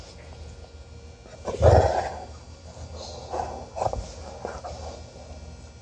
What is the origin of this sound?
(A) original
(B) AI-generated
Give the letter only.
A